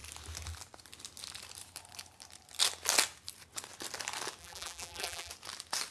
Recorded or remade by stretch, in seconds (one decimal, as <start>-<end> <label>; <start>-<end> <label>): 0.0-4.4 recorded; 4.4-5.3 remade; 5.3-5.9 recorded